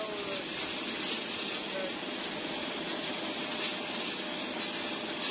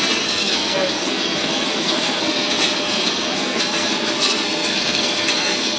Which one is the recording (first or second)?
first